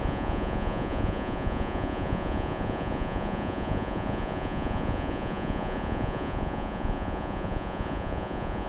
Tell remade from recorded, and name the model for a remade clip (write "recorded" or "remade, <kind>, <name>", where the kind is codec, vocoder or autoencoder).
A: remade, vocoder, Vocos